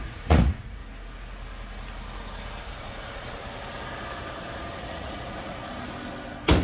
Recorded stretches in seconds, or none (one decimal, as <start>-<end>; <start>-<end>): 0.8-2.6; 3.4-4.8; 5.6-6.6